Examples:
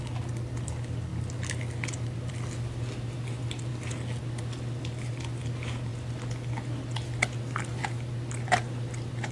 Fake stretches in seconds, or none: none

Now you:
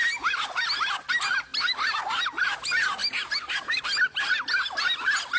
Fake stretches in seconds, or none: 1.5-2.2 (vocoder, BigVGAN v2)

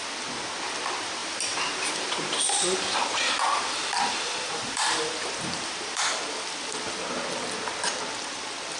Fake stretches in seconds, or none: 1.2-6.0 (vocoder, BigVGAN v2)

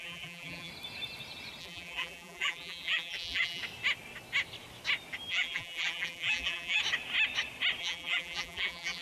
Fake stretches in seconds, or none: 0.0-0.7 (vocoder, BigVGAN v2); 1.6-3.6; 5.3-6.8; 7.8-9.0

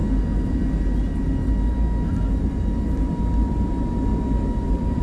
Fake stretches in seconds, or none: 2.8-5.0 (vocoder, BigVGAN v2)

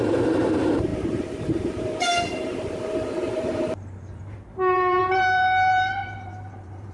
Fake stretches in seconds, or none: 0.0-6.9 (vocoder, BigVGAN v2)

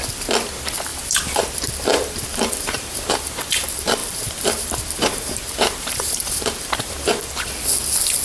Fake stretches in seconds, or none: 0.9-1.5 (vocoder, BigVGAN v2); 1.9-3.6; 4.0-7.5